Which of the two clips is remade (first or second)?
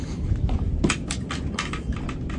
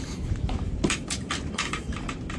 second